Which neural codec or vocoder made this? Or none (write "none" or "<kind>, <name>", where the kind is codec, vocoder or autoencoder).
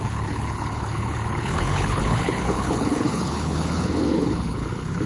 codec, HILCodec